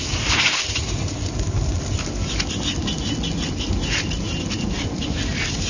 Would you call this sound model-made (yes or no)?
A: yes